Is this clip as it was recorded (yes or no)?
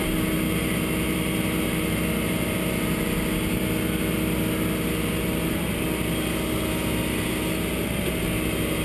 yes